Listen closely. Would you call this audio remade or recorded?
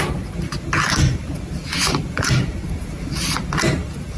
recorded